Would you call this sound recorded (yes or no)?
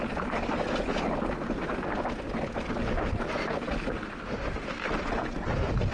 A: yes